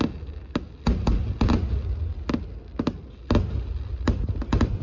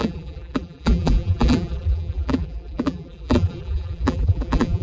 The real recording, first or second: first